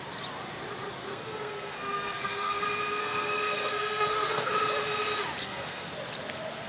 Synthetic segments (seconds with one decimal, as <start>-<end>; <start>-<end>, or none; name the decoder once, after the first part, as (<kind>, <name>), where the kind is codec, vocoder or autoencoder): 1.1-2.6 (codec, SNAC); 3.0-4.5; 5.4-5.9